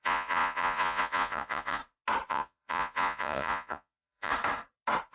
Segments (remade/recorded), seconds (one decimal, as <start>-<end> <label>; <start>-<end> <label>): 0.0-1.8 remade; 1.8-2.3 recorded; 2.3-4.3 remade; 4.3-5.1 recorded